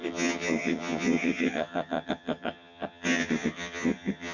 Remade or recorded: remade